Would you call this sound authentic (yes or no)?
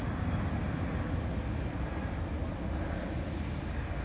yes